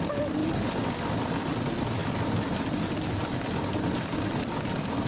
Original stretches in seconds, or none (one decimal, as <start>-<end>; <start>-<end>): 0.0-5.1